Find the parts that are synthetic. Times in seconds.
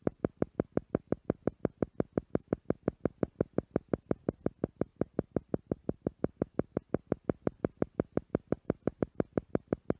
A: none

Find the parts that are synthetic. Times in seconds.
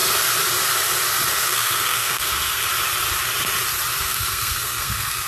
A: 1.3-2.7 (codec, SNAC); 4.0-5.3